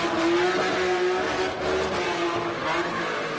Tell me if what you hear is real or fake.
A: real